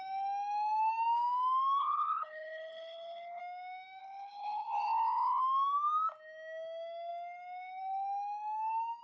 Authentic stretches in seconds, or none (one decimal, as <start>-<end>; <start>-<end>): 0.0-1.8; 3.4-4.0; 5.4-9.0